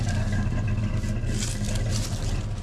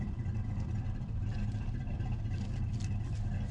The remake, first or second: second